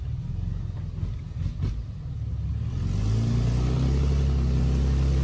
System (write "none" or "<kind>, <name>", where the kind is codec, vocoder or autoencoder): none